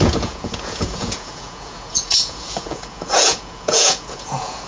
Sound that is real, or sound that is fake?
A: fake